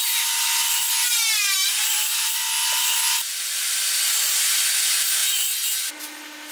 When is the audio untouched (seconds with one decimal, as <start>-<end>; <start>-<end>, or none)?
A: 0.0-1.6; 3.6-6.5